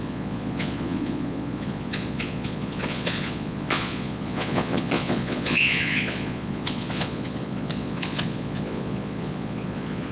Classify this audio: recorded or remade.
remade